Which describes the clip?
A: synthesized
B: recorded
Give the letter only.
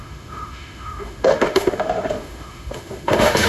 A